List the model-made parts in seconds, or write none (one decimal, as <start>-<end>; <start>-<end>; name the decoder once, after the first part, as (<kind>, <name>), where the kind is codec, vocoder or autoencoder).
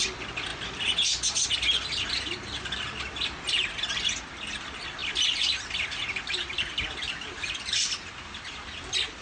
0.5-1.5 (vocoder, BigVGAN v2); 5.0-8.1